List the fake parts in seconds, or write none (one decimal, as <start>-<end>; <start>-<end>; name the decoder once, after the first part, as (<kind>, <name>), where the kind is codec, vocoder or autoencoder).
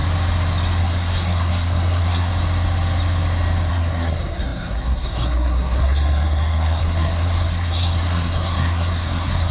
0.8-2.3 (codec, SNAC); 3.7-9.5